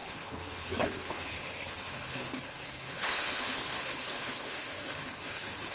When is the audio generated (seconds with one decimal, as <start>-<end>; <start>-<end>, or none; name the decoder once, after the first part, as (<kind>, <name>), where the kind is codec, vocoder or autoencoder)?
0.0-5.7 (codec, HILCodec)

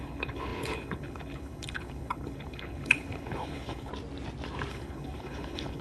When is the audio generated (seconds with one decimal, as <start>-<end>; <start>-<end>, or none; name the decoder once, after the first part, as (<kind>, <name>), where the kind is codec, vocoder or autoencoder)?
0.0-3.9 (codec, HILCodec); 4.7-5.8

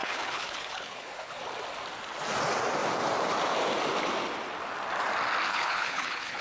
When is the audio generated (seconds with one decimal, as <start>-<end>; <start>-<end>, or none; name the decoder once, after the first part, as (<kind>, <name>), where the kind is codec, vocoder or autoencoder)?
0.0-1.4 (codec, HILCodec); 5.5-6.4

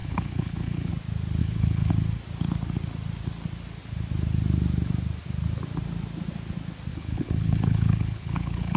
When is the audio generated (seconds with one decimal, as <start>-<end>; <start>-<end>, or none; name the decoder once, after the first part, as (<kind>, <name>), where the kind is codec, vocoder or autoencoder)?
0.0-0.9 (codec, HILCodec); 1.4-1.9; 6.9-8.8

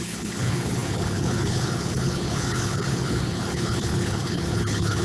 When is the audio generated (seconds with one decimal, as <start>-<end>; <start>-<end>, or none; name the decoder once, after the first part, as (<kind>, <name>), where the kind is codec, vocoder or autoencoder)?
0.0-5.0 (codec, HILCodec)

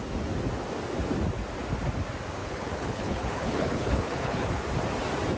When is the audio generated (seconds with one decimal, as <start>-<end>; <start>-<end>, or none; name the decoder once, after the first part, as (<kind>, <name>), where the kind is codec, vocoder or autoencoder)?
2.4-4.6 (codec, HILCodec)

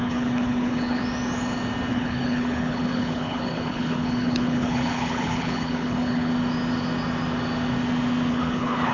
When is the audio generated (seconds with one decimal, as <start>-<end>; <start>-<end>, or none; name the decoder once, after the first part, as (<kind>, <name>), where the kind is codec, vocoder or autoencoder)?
0.0-1.0 (codec, HILCodec); 1.9-6.3; 8.3-8.9

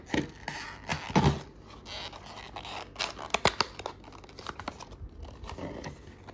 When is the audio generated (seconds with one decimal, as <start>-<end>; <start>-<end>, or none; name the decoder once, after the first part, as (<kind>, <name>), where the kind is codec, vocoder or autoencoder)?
none